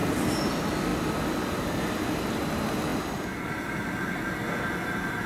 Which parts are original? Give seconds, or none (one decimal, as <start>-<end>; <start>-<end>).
0.0-5.3